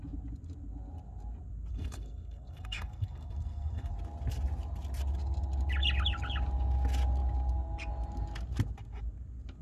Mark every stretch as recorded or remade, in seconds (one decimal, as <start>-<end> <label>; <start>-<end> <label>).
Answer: 0.0-1.7 recorded; 1.7-3.9 remade; 3.9-9.6 recorded